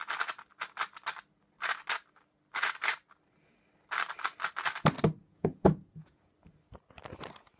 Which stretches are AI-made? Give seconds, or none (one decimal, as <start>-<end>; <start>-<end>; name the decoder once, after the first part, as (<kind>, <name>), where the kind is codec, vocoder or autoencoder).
5.2-6.3 (vocoder, Vocos)